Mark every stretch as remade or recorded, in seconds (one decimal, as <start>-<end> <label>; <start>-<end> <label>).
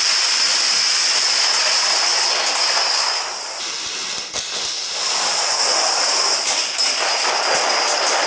0.0-8.3 recorded